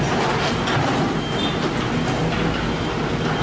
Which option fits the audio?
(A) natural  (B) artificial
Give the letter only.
A